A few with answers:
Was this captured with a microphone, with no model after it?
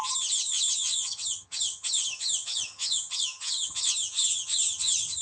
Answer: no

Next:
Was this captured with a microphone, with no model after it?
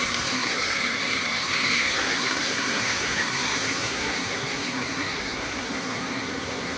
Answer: no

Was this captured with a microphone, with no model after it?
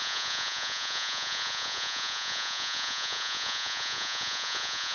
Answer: no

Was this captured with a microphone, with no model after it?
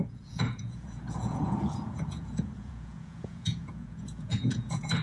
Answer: no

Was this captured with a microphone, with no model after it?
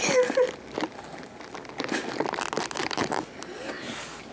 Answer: yes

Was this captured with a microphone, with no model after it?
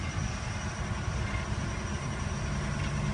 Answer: yes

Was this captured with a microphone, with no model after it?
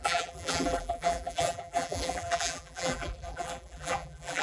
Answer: no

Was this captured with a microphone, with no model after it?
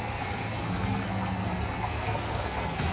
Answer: no